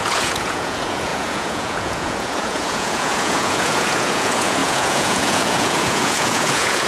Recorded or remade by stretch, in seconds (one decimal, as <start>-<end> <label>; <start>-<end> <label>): 0.0-6.9 remade